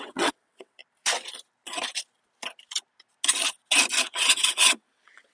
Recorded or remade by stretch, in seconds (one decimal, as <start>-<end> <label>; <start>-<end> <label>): 0.0-0.8 remade; 0.8-4.0 recorded; 4.0-5.3 remade